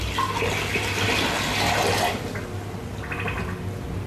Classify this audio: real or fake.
real